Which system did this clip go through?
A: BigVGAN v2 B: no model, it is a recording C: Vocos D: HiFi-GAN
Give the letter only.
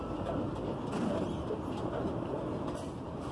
B